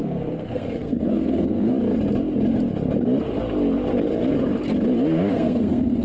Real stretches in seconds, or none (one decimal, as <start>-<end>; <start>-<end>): 1.7-5.3